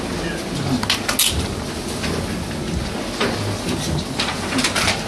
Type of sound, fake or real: real